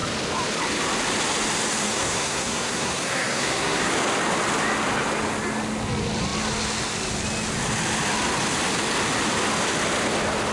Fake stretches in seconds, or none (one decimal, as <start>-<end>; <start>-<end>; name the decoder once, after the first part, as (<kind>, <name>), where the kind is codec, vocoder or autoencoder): 1.8-3.9 (codec, SNAC)